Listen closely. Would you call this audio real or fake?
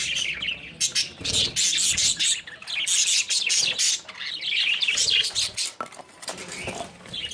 real